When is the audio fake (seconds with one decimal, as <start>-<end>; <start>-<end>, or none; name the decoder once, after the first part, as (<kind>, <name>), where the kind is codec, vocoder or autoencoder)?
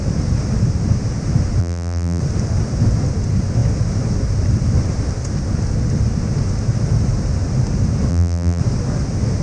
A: 1.6-2.2 (vocoder, BigVGAN v2); 8.1-8.6